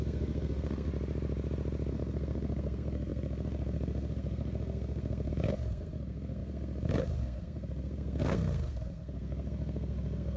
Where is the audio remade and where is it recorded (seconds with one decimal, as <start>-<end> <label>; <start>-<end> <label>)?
0.0-0.9 remade; 0.9-1.9 recorded; 1.9-10.4 remade